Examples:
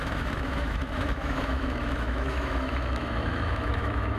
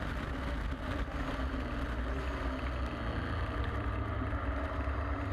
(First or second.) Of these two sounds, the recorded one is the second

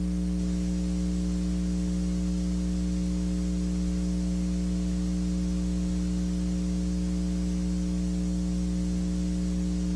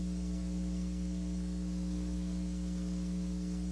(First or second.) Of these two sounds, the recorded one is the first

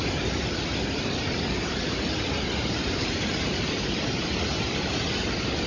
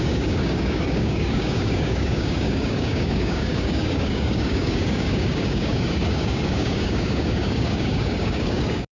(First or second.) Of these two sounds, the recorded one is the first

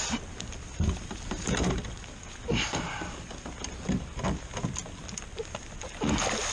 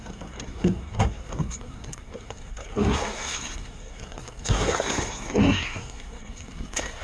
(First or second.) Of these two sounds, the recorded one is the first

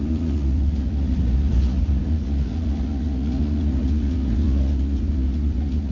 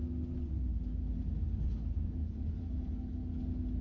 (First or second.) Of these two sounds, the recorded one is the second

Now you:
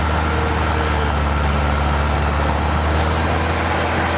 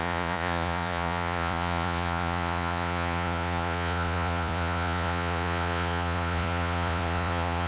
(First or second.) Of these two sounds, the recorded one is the first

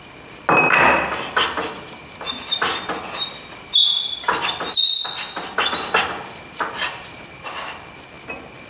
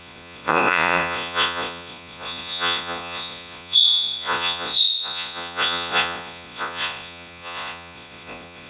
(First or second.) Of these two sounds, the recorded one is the first